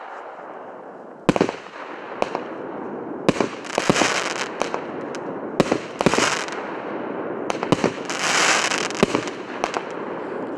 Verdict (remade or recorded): recorded